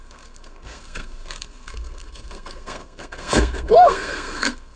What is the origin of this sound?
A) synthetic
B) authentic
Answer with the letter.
A